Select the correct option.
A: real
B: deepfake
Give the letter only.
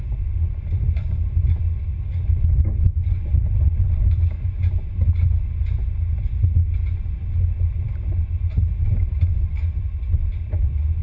A